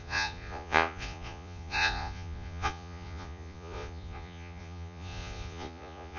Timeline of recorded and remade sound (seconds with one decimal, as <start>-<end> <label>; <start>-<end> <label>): 0.0-6.2 remade